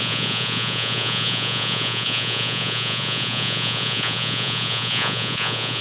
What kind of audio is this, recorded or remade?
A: remade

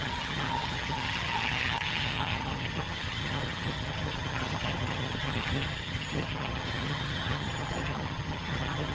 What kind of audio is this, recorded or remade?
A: remade